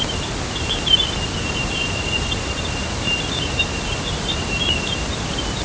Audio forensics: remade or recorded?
recorded